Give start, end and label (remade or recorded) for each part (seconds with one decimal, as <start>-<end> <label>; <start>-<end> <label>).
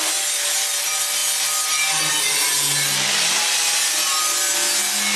0.0-5.2 recorded